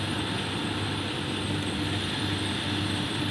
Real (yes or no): yes